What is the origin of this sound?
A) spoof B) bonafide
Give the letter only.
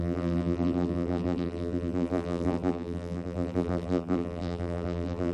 A